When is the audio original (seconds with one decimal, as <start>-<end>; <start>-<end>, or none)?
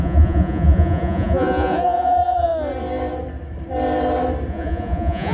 2.5-4.5